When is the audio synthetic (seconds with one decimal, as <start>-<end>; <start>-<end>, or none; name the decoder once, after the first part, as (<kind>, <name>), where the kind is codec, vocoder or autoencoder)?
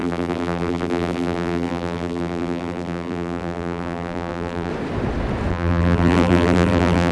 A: 0.0-4.7 (vocoder, BigVGAN v2); 5.5-7.1